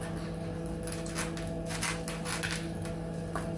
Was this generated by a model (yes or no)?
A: no